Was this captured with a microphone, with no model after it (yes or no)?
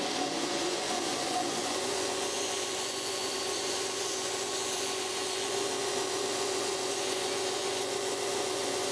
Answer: no